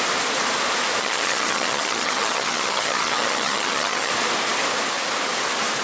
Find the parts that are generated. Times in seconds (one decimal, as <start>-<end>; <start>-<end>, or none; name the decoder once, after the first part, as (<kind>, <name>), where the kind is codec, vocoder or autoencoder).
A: 1.0-4.1 (vocoder, HiFi-GAN)

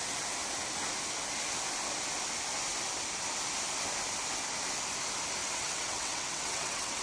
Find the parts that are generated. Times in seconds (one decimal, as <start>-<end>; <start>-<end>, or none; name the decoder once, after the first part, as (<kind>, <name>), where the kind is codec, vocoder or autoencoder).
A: 5.4-7.0 (vocoder, WaveNeXt)

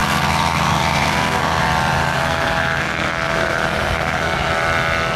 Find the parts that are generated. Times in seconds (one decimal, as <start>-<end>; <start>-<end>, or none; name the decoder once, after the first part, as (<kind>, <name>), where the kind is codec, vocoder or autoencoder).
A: 0.0-1.6 (codec, SNAC); 2.0-4.5

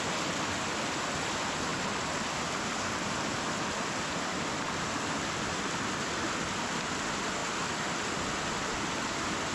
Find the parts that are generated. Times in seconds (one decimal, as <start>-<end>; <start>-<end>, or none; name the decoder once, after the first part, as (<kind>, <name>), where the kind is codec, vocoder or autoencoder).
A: none